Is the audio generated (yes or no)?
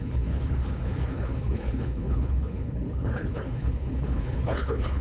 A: yes